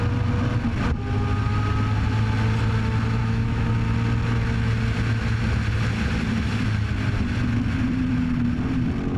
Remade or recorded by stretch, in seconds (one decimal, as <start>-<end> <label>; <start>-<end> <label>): 0.0-3.2 recorded; 3.2-3.7 remade; 3.7-9.2 recorded